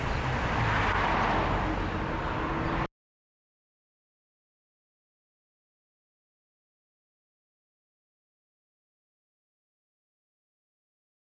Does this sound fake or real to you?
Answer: real